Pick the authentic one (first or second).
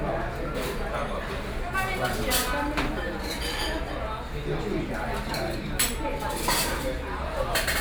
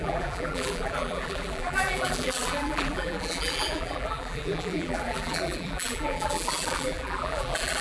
first